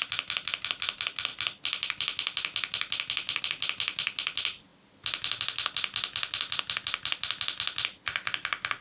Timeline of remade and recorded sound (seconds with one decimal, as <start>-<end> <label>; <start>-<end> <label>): 0.0-8.8 recorded